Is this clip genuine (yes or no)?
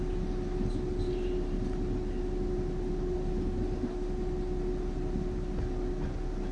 yes